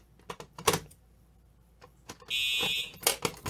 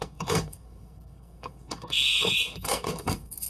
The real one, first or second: first